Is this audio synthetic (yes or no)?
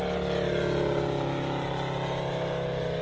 no